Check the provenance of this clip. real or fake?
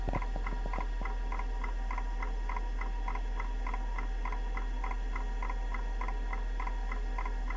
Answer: real